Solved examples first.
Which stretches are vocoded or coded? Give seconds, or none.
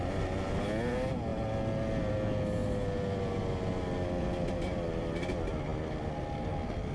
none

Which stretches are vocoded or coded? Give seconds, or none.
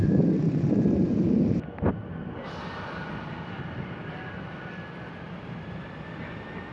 none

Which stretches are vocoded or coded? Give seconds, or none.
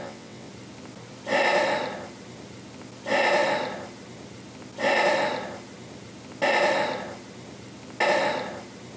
0.0-0.5 (vocoder, WaveNeXt)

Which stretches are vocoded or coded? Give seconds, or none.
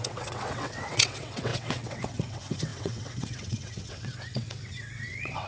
0.0-5.5 (vocoder, WaveNeXt)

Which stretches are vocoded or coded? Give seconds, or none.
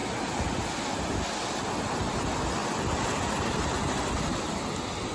none